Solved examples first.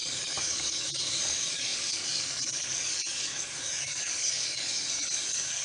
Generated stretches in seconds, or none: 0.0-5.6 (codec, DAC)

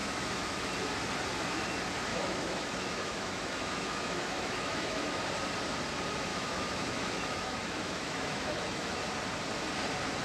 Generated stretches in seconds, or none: 0.0-0.7 (autoencoder, DAC-VAE); 2.1-5.2; 6.3-9.0

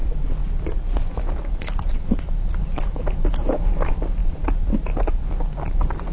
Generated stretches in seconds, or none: 0.4-2.0 (vocoder, BigVGAN v2); 4.2-5.0

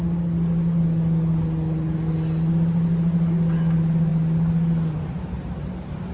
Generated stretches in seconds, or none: none

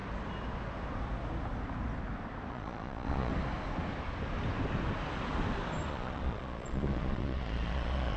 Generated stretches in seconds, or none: 2.5-3.3 (vocoder, Vocos); 5.9-8.2

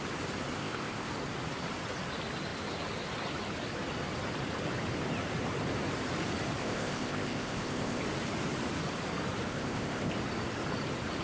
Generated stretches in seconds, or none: 0.6-1.1 (codec, ZipCodec); 6.6-8.0; 9.5-10.1

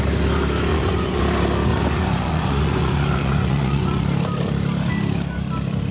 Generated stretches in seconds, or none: 0.7-1.2 (vocoder, Vocos); 1.7-4.0